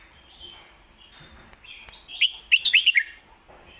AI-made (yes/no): no